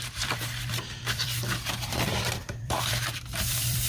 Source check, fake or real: fake